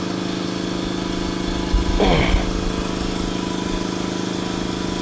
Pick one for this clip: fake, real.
real